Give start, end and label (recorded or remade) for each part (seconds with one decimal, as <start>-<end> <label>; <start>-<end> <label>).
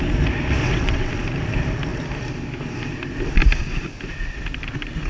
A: 0.0-0.6 recorded; 0.6-1.1 remade; 1.1-5.1 recorded